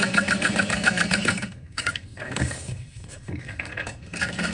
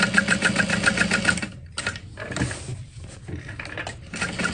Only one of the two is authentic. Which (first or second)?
second